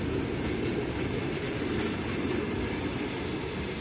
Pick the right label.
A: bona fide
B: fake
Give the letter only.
A